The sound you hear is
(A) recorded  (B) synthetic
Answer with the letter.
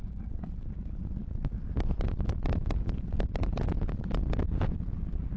A